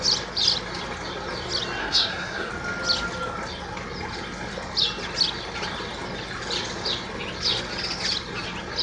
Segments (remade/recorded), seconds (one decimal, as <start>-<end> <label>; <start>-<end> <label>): 0.0-1.8 recorded; 1.8-2.5 remade; 2.5-8.8 recorded